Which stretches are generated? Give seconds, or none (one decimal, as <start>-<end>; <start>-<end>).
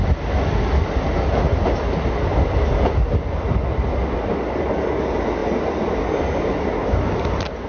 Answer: none